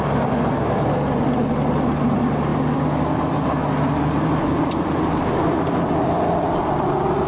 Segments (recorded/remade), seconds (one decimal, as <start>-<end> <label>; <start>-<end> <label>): 0.0-7.3 recorded